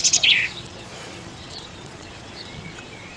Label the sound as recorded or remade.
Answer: remade